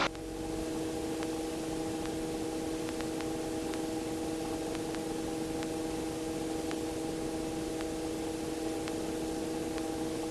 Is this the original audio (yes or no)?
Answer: yes